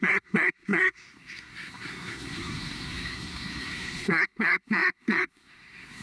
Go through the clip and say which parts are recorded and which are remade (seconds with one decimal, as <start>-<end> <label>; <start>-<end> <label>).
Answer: 0.0-6.0 remade